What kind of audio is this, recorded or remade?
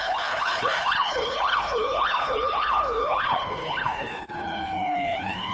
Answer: remade